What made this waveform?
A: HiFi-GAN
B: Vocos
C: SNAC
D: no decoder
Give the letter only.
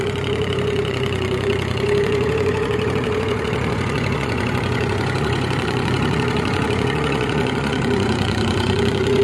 B